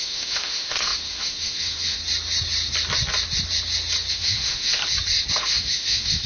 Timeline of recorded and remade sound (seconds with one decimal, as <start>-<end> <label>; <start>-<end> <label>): 0.0-2.0 remade; 2.0-4.1 recorded; 4.1-4.8 remade; 4.8-5.4 recorded; 5.4-6.3 remade